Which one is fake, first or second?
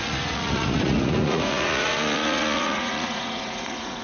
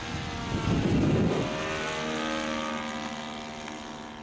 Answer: first